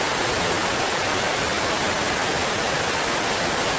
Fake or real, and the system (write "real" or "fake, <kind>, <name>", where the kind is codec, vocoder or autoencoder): real